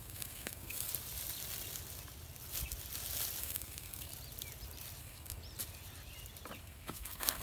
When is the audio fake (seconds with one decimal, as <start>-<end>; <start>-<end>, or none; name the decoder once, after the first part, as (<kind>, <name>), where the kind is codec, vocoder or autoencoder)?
0.0-0.9 (codec, SNAC); 3.4-4.1; 5.0-5.4; 6.6-7.4